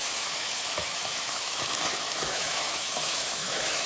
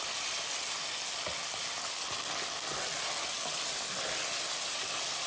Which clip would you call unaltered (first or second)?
second